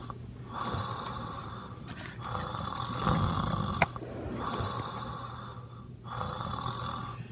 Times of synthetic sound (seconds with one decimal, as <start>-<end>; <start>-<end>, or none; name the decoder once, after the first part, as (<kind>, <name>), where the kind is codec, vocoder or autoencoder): none

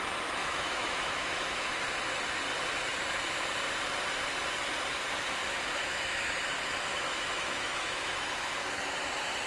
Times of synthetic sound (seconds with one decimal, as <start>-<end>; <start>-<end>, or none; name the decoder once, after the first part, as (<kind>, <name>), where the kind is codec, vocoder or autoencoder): 0.4-1.8 (autoencoder, DAC-VAE); 5.8-6.4; 6.9-8.5